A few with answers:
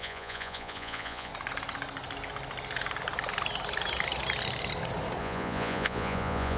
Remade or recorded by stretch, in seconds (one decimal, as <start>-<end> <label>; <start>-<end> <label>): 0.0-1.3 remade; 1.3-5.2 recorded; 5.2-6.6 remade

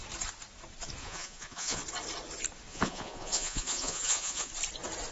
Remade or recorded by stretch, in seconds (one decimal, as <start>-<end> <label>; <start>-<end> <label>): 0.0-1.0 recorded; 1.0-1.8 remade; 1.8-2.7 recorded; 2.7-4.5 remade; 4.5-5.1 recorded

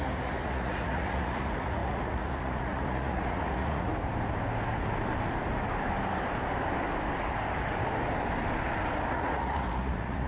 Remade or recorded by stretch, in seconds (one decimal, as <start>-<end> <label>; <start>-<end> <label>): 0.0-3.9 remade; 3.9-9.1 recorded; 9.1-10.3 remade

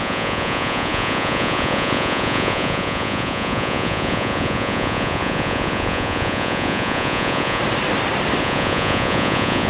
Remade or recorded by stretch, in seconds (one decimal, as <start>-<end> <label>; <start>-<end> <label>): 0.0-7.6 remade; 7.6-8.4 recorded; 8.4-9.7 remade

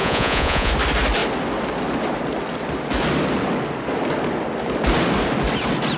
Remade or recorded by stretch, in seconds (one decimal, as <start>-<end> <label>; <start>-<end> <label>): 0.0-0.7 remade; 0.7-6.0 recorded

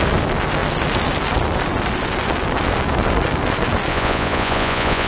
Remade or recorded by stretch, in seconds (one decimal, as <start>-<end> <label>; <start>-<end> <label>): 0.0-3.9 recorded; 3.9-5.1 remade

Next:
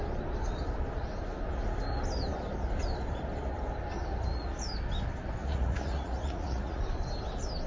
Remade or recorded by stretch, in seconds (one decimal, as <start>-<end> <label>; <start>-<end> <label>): 0.0-5.4 recorded; 5.4-6.8 remade; 6.8-7.7 recorded

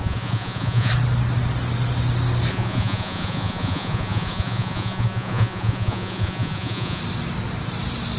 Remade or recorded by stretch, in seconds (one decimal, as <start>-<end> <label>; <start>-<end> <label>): 0.0-0.9 remade; 0.9-2.5 recorded; 2.5-7.0 remade; 7.0-8.2 recorded